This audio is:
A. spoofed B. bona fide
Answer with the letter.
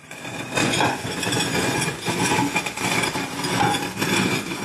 A